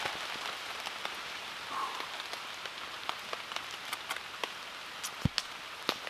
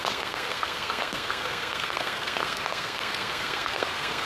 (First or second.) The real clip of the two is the first